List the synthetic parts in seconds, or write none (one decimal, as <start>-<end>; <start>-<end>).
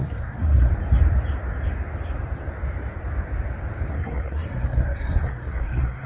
0.0-0.7; 3.9-6.1